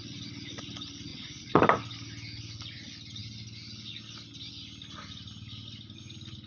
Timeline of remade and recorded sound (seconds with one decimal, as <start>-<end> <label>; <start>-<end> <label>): 0.0-1.1 recorded; 1.1-1.6 remade; 1.6-6.5 recorded